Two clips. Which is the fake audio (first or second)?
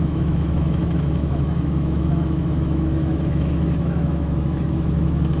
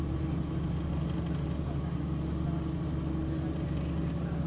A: first